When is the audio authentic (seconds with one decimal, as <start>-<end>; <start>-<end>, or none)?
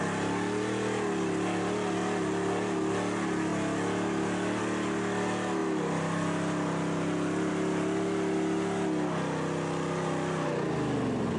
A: 0.0-11.4